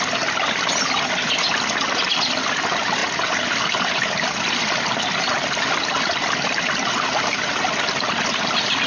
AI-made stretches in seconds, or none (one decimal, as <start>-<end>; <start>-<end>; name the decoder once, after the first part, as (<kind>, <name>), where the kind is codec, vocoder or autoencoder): none